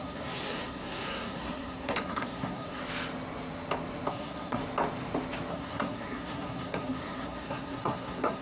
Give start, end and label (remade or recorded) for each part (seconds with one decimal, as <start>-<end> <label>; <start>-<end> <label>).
0.0-2.8 remade; 2.8-4.1 recorded; 4.1-4.6 remade; 4.6-5.5 recorded; 5.5-8.4 remade